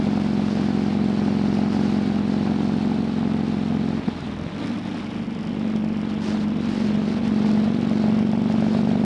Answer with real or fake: real